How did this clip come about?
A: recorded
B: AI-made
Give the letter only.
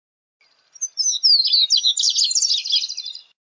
A